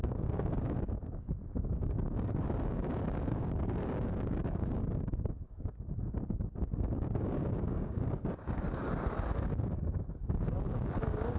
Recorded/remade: remade